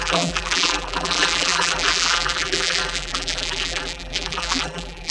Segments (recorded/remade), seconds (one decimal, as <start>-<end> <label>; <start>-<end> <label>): 0.0-5.1 remade